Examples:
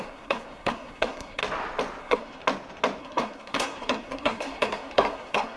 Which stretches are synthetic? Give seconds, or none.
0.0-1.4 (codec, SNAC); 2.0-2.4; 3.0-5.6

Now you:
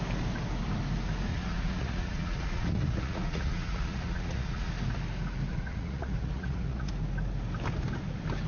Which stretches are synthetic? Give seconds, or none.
1.3-4.7 (vocoder, Vocos); 5.5-6.9

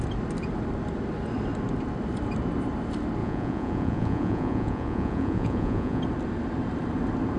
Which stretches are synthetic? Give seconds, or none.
3.2-6.0 (vocoder, Vocos)

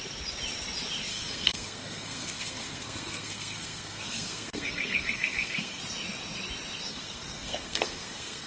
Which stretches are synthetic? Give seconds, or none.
1.1-5.8 (codec, SNAC); 6.9-8.5